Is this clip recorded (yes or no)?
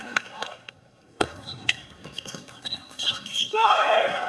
no